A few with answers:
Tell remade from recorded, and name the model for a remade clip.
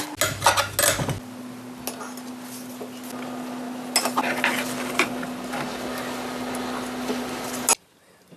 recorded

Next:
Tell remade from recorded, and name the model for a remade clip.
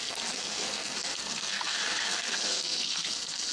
remade, codec, SNAC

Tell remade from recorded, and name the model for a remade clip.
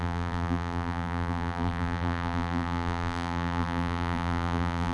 remade, vocoder, BigVGAN v2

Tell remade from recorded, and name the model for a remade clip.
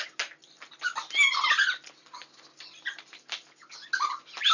recorded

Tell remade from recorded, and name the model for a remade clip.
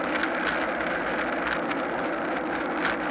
recorded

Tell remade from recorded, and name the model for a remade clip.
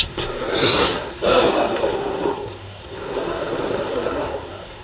remade, codec, SNAC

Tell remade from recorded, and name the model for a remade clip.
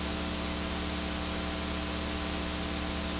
recorded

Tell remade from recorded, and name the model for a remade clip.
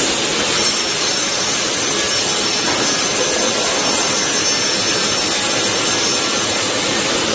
recorded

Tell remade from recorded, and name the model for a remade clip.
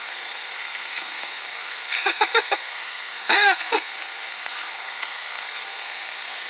remade, codec, SNAC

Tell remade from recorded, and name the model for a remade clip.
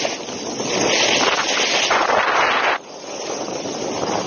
recorded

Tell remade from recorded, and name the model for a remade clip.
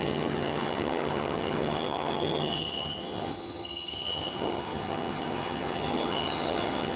remade, vocoder, HiFi-GAN